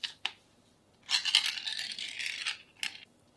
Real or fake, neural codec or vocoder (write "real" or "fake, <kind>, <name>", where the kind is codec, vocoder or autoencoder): real